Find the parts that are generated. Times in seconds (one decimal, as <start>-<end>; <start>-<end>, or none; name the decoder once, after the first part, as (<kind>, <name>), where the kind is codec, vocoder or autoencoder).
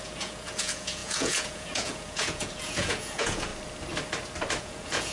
0.0-3.5 (vocoder, Vocos); 4.6-5.1